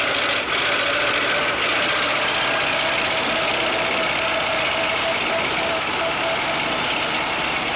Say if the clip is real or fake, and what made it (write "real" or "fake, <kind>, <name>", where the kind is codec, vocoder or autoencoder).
real